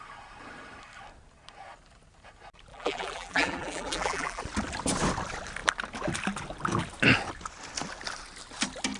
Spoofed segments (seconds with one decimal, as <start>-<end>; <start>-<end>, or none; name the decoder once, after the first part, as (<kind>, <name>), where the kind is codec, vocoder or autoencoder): 2.7-4.4 (vocoder, BigVGAN v2)